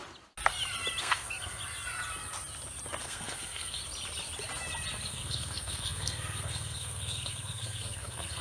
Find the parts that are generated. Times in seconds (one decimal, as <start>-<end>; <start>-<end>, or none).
1.0-1.6; 3.0-3.8; 5.1-8.4